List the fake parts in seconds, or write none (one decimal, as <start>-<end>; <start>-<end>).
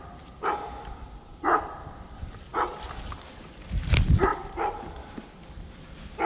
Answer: 0.0-2.5; 3.3-6.2